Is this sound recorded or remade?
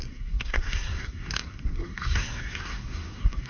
remade